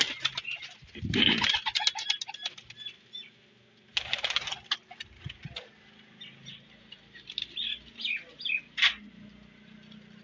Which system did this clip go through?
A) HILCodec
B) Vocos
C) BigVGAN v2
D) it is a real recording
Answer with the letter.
D